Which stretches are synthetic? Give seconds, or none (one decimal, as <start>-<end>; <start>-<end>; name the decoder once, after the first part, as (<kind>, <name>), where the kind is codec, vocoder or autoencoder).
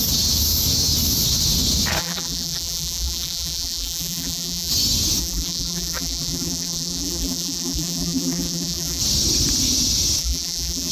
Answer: 2.0-4.7 (vocoder, BigVGAN v2); 5.2-9.0; 10.2-10.9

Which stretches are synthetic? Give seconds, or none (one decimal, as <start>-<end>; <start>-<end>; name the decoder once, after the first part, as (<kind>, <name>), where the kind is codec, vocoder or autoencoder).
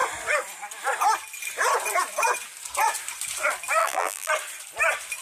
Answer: 3.8-4.3 (vocoder, BigVGAN v2)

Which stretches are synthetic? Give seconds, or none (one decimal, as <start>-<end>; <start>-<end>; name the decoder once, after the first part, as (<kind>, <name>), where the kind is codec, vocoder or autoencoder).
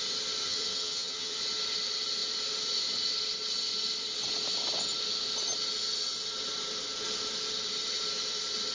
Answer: 0.4-1.4 (vocoder, HiFi-GAN)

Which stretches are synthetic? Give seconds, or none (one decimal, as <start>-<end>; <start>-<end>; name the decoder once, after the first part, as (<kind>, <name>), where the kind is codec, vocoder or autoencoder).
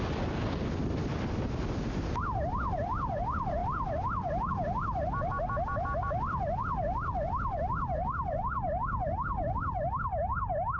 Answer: none